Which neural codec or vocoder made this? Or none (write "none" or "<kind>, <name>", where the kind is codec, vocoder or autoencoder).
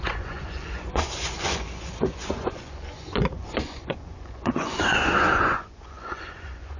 vocoder, Vocos